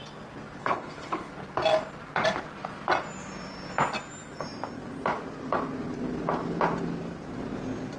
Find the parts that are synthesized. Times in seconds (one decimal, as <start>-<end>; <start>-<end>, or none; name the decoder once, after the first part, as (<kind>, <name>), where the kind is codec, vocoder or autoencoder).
0.6-1.3 (codec, HILCodec)